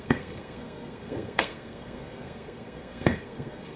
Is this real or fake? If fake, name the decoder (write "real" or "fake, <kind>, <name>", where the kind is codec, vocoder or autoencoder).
fake, codec, SNAC